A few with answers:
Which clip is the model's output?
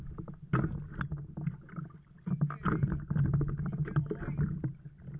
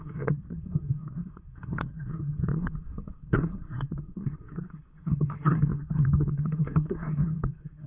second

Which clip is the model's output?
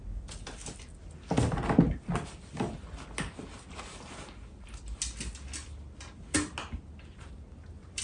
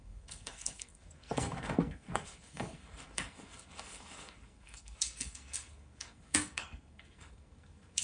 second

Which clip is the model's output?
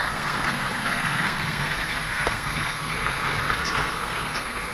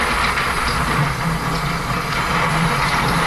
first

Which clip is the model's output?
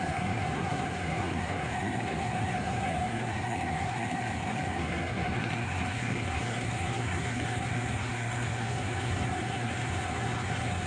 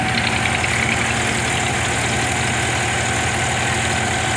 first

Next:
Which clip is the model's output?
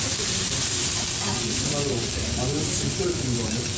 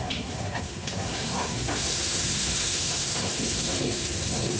second